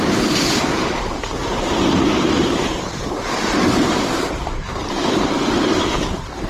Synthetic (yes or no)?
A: yes